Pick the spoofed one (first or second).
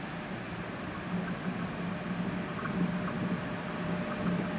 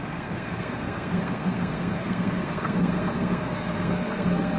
second